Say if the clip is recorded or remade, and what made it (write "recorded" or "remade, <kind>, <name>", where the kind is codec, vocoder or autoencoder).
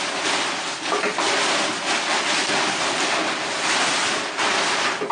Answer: recorded